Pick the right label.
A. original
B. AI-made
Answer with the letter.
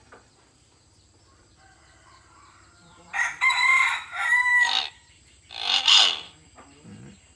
B